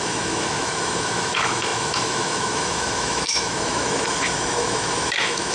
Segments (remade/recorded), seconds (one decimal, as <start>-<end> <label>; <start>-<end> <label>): 0.0-5.5 remade